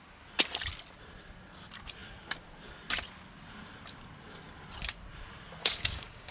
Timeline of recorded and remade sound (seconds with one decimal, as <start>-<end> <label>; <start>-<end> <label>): 0.0-5.6 recorded; 5.6-6.3 remade